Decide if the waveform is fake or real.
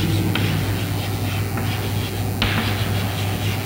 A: real